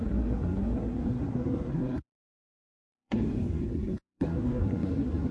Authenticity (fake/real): fake